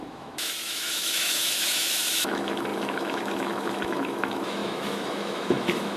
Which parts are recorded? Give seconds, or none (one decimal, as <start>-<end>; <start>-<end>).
none